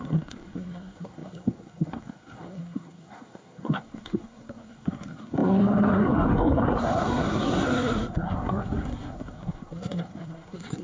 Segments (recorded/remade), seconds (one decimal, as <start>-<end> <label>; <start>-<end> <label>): 0.0-10.8 remade